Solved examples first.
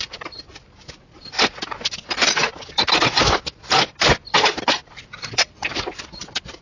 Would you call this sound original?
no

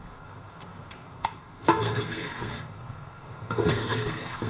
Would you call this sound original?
no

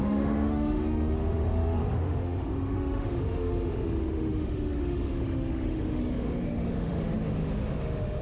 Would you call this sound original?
no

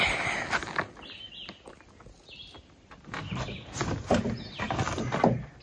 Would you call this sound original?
yes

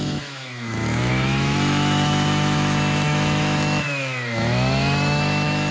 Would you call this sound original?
no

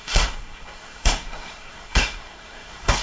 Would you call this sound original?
no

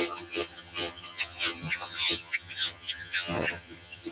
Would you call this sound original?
no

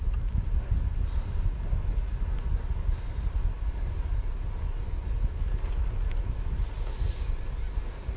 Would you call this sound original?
yes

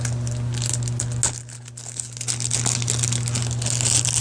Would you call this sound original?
yes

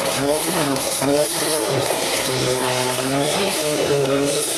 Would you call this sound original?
no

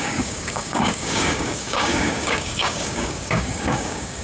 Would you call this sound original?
no